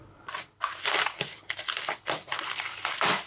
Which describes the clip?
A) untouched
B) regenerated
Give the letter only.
B